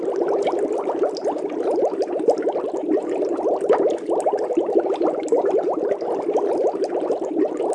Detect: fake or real real